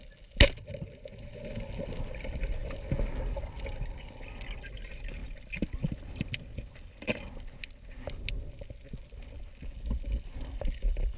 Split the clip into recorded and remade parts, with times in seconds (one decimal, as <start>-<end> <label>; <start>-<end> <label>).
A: 0.0-11.2 recorded